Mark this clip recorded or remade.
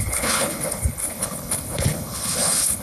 remade